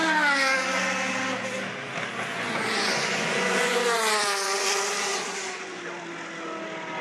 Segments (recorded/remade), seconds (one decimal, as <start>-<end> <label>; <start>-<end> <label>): 0.0-2.3 recorded; 2.3-5.8 remade; 5.8-7.0 recorded